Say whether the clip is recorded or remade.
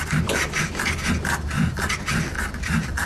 recorded